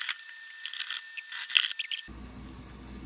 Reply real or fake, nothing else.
real